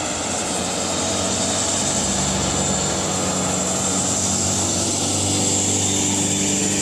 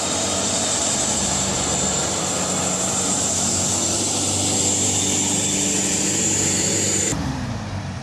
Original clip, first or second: first